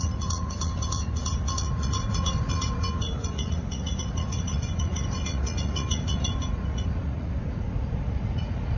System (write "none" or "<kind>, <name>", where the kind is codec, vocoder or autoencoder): vocoder, Vocos